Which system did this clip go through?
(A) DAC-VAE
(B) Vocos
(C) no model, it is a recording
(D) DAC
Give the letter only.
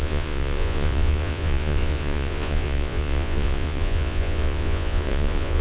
B